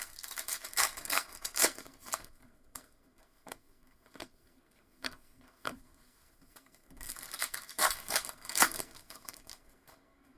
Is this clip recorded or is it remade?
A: remade